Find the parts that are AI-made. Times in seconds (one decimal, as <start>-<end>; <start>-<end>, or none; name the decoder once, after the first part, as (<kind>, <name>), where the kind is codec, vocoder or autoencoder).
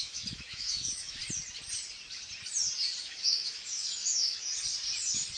0.0-1.2 (autoencoder, DAC-VAE); 3.0-4.5